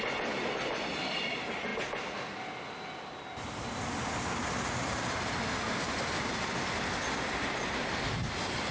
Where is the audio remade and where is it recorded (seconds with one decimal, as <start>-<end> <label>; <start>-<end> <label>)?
0.0-8.7 recorded